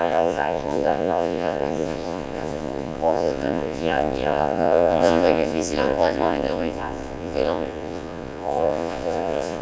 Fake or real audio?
fake